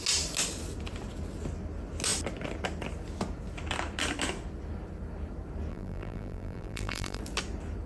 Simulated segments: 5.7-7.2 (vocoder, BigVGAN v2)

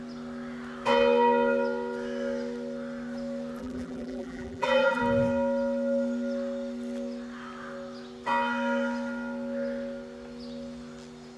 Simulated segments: 3.6-5.0 (vocoder, BigVGAN v2)

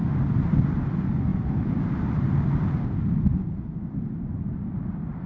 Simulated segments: none

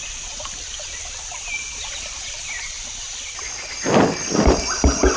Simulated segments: 0.0-0.9 (vocoder, BigVGAN v2)

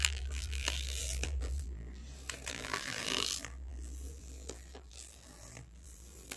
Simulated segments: 0.0-2.0 (vocoder, BigVGAN v2); 2.5-6.4